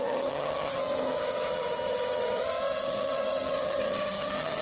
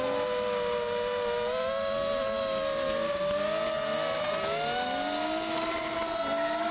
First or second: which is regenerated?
first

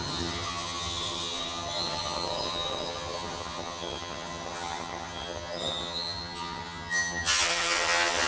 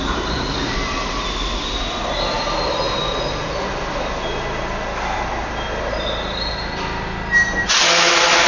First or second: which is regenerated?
first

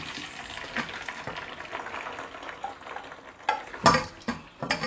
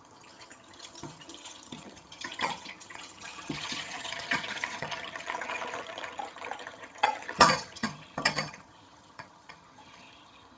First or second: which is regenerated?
second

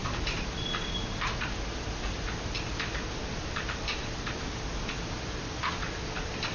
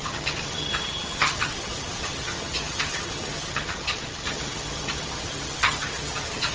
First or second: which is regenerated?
second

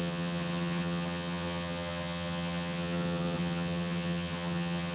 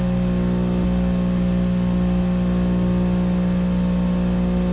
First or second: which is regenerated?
first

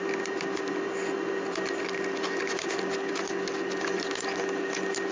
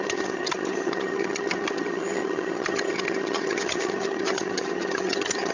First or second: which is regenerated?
second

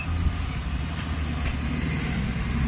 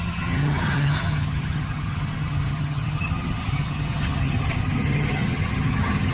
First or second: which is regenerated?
second